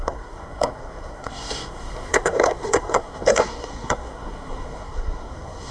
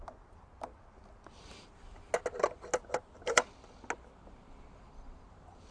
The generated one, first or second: first